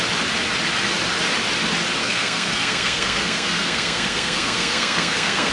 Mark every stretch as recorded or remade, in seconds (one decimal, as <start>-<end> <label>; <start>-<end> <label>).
0.0-2.0 recorded; 2.0-5.5 remade